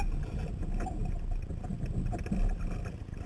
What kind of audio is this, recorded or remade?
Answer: recorded